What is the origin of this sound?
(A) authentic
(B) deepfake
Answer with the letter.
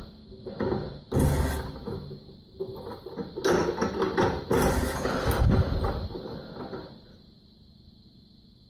A